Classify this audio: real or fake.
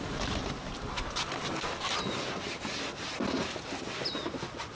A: real